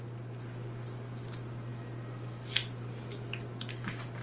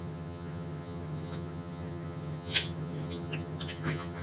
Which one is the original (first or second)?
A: first